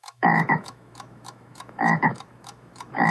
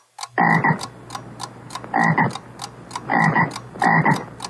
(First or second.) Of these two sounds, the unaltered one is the second